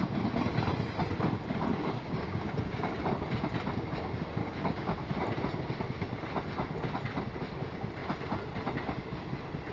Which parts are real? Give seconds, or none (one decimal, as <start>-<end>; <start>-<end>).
0.0-1.7; 3.0-4.4; 5.1-9.7